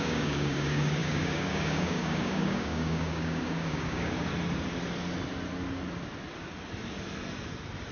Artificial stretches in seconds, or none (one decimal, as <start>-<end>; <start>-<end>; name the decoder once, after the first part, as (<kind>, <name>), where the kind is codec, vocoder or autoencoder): 0.0-4.3 (codec, DAC)